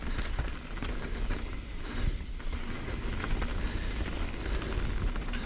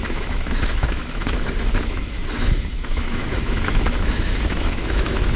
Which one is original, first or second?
first